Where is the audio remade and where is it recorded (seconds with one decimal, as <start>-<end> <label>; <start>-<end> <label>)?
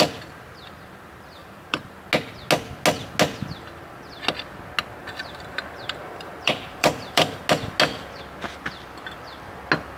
0.0-1.4 recorded; 1.4-1.9 remade; 1.9-5.0 recorded; 5.0-7.4 remade; 7.4-10.0 recorded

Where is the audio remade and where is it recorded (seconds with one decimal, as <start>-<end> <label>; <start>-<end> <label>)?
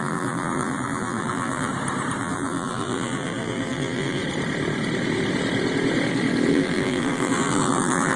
0.0-1.7 remade; 1.7-2.2 recorded; 2.2-4.2 remade; 4.2-6.5 recorded; 6.5-8.2 remade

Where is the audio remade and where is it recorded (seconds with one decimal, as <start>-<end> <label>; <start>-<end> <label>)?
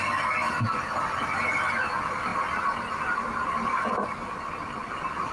0.0-5.3 recorded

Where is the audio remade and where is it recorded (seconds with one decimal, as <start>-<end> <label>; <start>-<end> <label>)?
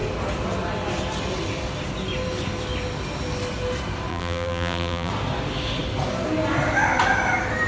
0.0-4.1 recorded; 4.1-5.1 remade; 5.1-7.7 recorded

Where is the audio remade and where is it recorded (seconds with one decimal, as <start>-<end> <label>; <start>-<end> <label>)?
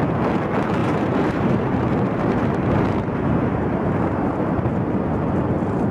0.0-0.8 recorded; 0.8-4.3 remade; 4.3-5.9 recorded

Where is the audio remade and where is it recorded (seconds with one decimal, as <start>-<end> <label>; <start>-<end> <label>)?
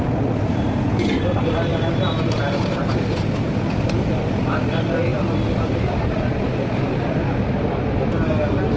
0.0-8.8 recorded